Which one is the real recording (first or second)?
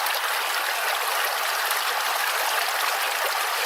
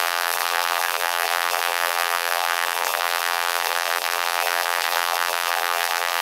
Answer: first